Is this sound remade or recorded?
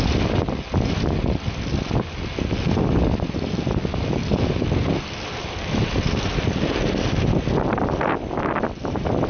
recorded